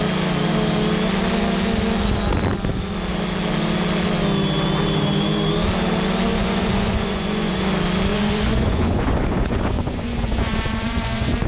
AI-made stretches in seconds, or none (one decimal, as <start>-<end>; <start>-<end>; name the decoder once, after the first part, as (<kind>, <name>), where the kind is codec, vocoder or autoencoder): 6.3-7.6 (vocoder, Vocos); 8.1-11.5